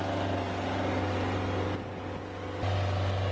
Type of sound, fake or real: real